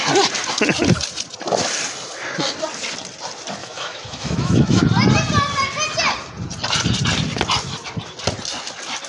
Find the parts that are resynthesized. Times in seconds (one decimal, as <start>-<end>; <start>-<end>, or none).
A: 3.6-4.8